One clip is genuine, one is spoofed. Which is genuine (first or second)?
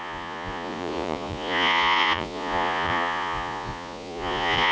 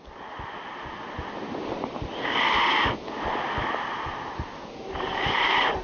second